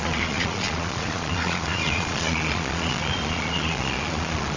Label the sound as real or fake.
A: fake